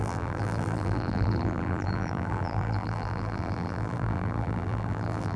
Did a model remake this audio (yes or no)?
yes